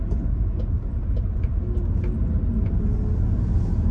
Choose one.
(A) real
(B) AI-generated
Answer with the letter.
A